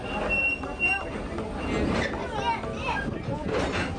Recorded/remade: recorded